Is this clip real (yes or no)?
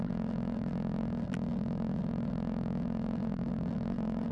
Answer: no